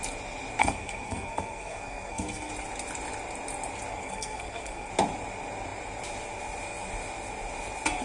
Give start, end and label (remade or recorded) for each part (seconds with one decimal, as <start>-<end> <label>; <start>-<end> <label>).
0.0-0.6 recorded; 0.6-2.5 remade; 2.5-3.9 recorded; 3.9-4.9 remade; 4.9-8.0 recorded